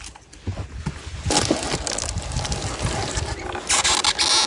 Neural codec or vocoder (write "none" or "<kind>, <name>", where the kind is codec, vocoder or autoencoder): none